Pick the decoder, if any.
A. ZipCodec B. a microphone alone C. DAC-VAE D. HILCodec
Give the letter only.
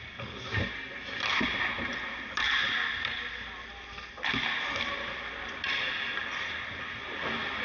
B